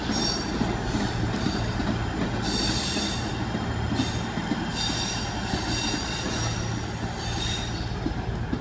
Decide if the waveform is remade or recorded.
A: recorded